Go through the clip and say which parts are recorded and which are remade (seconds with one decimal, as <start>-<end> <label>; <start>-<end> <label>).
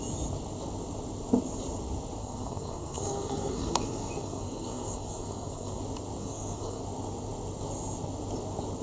0.0-2.2 recorded; 2.2-5.8 remade; 5.8-6.2 recorded; 6.2-6.8 remade; 6.8-8.8 recorded